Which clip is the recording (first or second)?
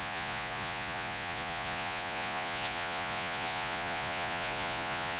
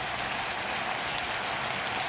second